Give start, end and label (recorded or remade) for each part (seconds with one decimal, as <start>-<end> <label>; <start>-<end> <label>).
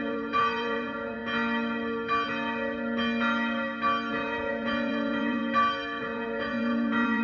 0.0-1.2 remade; 1.2-4.1 recorded; 4.1-5.4 remade; 5.4-6.0 recorded; 6.0-7.2 remade